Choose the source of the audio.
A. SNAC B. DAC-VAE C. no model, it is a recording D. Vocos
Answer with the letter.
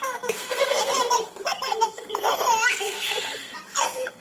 A